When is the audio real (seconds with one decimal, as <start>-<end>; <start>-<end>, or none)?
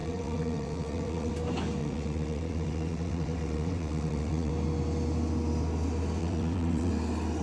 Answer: 1.3-1.8; 4.5-6.2; 6.9-7.4